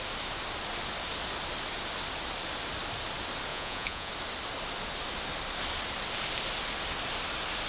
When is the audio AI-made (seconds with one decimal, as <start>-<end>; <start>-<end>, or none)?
3.5-4.1